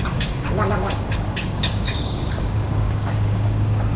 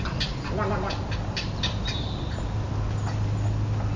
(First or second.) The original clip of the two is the second